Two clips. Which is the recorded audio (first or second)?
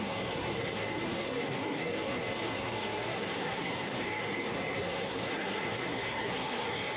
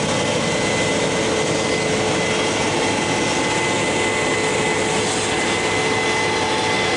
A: second